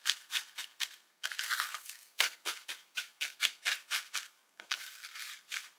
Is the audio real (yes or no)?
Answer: no